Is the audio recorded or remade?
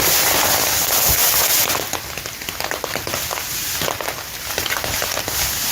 recorded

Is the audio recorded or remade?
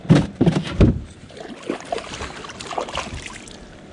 recorded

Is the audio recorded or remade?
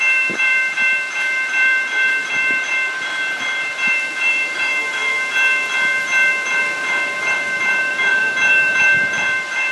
remade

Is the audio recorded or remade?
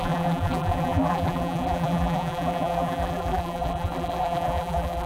remade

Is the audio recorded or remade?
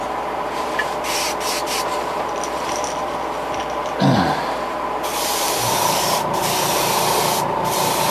remade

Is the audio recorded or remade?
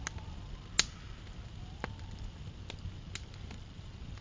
recorded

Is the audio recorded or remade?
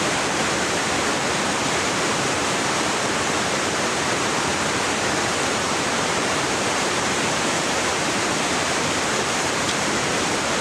remade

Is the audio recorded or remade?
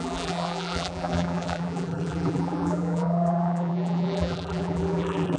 remade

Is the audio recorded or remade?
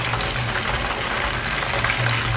recorded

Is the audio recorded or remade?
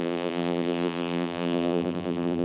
remade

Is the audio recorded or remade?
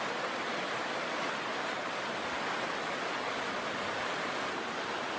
recorded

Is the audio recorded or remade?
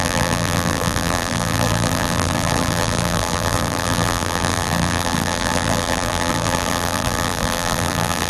remade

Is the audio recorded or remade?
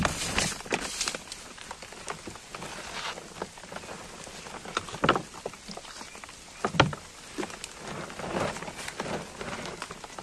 recorded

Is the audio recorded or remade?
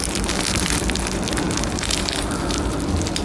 remade